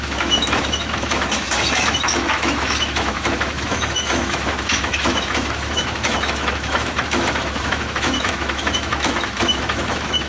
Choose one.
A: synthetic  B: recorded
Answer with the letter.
A